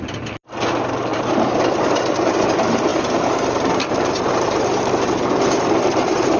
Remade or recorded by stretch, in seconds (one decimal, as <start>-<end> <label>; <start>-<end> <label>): 0.0-1.1 recorded; 1.1-1.8 remade; 1.8-2.9 recorded; 2.9-6.4 remade